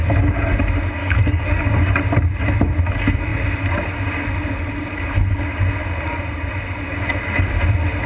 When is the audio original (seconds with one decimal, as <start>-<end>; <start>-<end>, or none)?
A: 0.0-1.0; 1.6-8.1